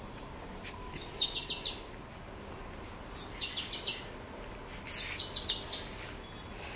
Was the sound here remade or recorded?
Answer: recorded